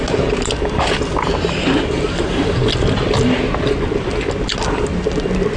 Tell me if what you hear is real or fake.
real